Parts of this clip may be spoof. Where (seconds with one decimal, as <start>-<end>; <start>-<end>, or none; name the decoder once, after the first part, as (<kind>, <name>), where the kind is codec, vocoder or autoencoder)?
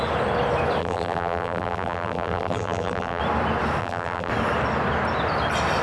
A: 0.8-3.2 (vocoder, BigVGAN v2); 3.8-4.3